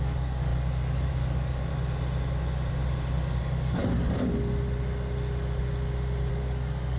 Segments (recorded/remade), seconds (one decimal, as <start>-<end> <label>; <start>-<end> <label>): 0.0-1.7 remade; 1.7-3.4 recorded; 3.4-3.8 remade; 3.8-6.3 recorded; 6.3-7.0 remade